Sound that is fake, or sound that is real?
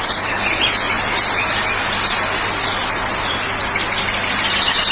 real